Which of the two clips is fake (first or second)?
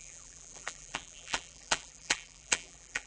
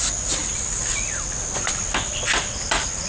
first